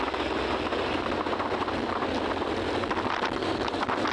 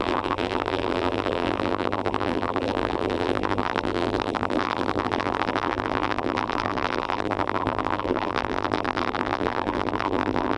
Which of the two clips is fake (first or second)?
second